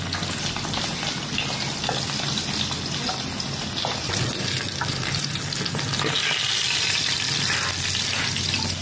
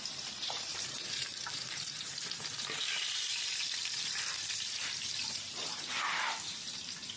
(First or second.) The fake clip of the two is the second